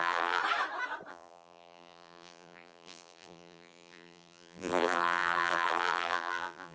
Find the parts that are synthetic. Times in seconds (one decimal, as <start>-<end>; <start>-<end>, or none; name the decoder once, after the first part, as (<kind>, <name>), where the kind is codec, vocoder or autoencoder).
0.0-0.4 (vocoder, BigVGAN v2); 1.1-6.7